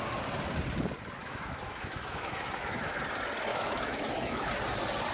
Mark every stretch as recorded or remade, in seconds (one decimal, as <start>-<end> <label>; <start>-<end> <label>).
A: 0.0-1.2 recorded; 1.2-3.0 remade; 3.0-3.5 recorded; 3.5-4.5 remade; 4.5-5.1 recorded